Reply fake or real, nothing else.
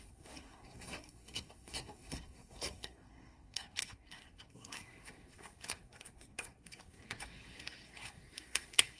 fake